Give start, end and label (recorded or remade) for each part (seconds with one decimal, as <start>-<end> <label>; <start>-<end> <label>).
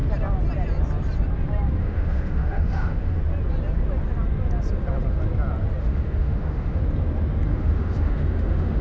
0.0-1.8 recorded; 1.8-3.2 remade; 3.2-5.8 recorded; 5.8-6.8 remade; 6.8-7.5 recorded; 7.5-8.8 remade